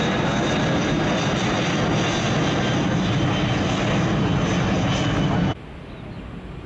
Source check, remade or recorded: recorded